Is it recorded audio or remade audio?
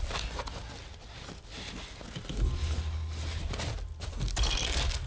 recorded